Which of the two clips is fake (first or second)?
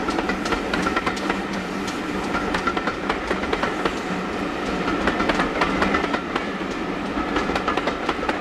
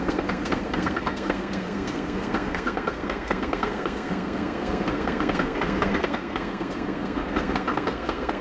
second